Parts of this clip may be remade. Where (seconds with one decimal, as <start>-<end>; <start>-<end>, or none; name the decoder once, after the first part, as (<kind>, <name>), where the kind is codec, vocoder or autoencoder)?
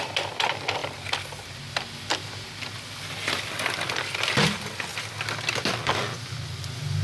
none